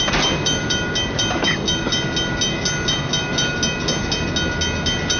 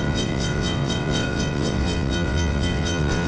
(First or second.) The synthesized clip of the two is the second